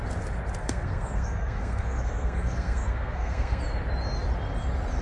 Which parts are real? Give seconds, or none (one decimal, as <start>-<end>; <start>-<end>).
0.0-0.6; 3.6-5.0